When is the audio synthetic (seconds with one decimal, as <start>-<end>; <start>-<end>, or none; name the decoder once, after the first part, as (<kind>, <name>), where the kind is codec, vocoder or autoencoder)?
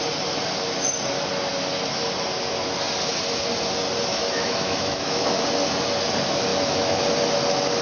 4.1-5.4 (autoencoder, DAC-VAE); 6.5-7.0